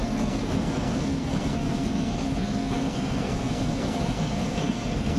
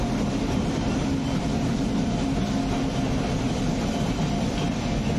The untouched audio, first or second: second